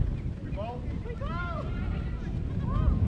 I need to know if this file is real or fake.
real